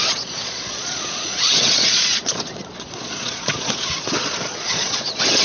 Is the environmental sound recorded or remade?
remade